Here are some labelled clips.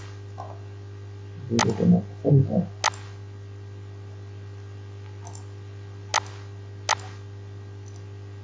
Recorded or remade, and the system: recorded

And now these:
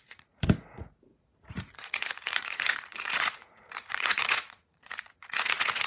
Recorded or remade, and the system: remade, vocoder, Vocos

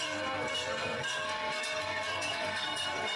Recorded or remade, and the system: remade, codec, SNAC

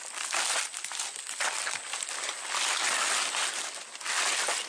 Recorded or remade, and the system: recorded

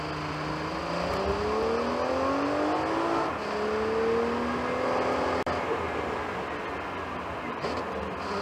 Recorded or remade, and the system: recorded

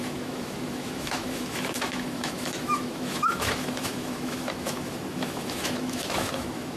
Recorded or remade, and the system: remade, autoencoder, DAC-VAE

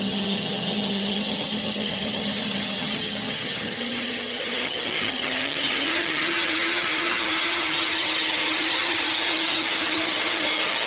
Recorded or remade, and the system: remade, vocoder, HiFi-GAN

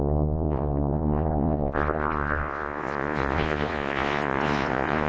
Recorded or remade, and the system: remade, vocoder, Vocos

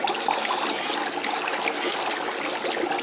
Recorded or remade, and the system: recorded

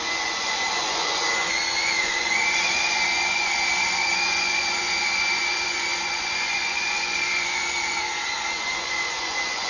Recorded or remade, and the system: remade, vocoder, Vocos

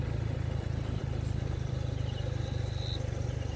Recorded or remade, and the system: recorded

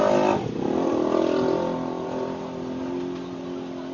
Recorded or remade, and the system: recorded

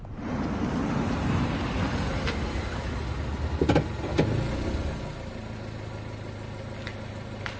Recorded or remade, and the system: recorded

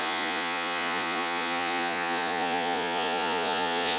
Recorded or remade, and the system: remade, vocoder, Vocos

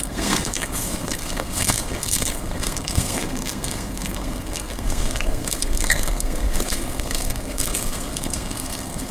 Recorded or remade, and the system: remade, codec, SNAC